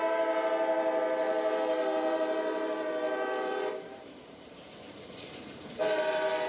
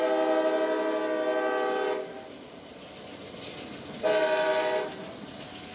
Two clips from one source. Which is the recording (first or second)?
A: second